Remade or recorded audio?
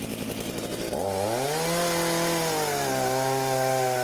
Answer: recorded